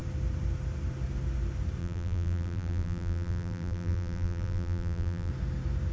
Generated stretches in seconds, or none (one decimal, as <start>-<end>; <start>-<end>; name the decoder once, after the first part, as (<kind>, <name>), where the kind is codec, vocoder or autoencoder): 1.8-5.3 (vocoder, BigVGAN v2)